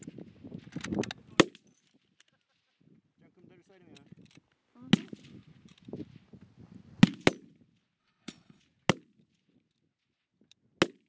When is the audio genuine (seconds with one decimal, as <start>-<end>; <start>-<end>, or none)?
0.0-8.0; 8.6-11.1